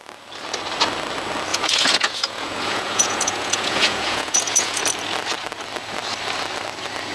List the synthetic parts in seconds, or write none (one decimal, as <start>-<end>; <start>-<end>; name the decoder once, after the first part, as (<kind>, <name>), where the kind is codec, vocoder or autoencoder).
1.5-4.8 (vocoder, Vocos)